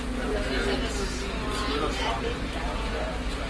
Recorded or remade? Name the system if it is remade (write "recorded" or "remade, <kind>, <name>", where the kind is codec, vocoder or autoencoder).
recorded